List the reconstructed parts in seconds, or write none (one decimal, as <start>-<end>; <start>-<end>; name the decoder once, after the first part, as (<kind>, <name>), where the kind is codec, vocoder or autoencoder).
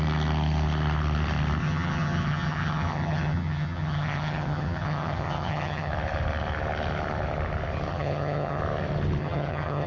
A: 1.6-5.9 (vocoder, HiFi-GAN); 7.9-8.6; 9.2-9.9